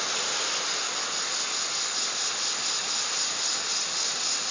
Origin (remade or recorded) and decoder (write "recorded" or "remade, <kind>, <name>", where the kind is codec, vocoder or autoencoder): recorded